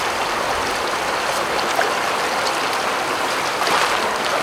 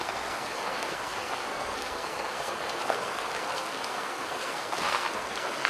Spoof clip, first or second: second